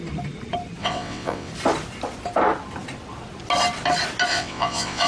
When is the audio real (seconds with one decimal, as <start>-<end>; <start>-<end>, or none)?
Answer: 0.0-0.8; 1.5-4.3